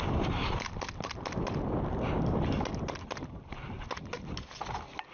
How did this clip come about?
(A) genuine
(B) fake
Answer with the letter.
A